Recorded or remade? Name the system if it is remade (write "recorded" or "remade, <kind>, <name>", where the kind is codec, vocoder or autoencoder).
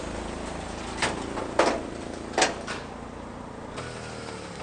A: recorded